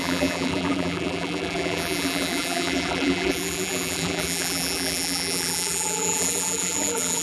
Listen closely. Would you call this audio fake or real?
fake